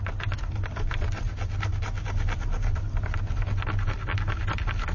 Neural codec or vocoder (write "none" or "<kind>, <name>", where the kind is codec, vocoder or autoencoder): none